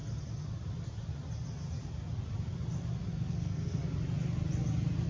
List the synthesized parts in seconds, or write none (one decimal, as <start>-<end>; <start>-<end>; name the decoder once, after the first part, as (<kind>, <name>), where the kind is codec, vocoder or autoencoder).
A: 3.1-3.8 (codec, SNAC)